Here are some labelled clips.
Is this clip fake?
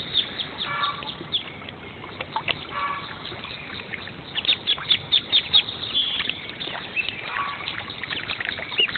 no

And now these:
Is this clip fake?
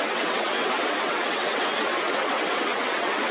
yes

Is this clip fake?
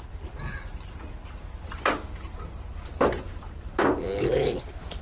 no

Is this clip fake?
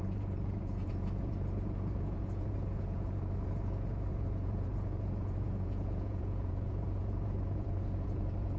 yes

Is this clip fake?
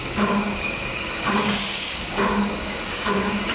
yes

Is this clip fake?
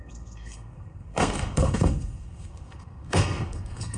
yes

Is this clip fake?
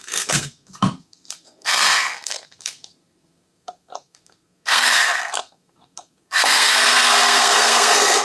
yes